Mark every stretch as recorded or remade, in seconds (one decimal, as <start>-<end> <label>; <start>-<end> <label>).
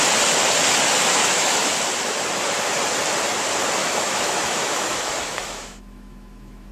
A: 0.0-1.2 recorded; 1.2-1.7 remade; 1.7-3.8 recorded; 3.8-6.7 remade